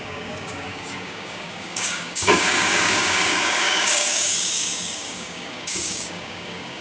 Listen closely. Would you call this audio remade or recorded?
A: remade